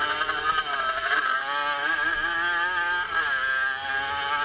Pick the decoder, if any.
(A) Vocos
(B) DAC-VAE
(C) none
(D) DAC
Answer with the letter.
C